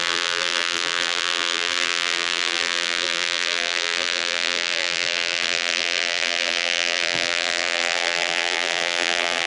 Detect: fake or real fake